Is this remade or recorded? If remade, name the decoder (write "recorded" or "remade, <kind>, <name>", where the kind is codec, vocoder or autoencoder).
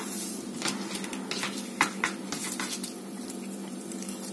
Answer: recorded